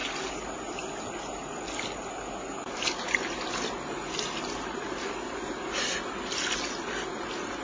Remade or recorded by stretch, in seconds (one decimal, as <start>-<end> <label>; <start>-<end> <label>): 0.0-7.6 recorded